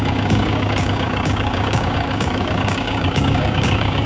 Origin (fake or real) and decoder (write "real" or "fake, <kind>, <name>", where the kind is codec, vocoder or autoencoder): fake, codec, DAC